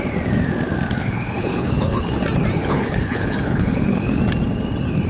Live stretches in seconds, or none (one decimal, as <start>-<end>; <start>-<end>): 0.0-1.0; 2.1-2.6; 4.2-5.1